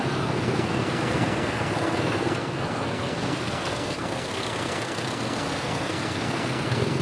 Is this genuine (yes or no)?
no